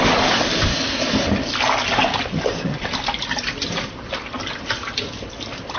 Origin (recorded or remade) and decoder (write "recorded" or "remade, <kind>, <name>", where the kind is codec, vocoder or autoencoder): recorded